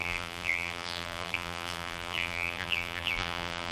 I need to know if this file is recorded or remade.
remade